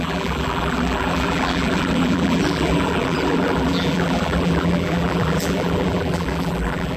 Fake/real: fake